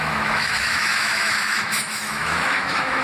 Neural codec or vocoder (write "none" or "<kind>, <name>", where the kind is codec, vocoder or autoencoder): autoencoder, DAC-VAE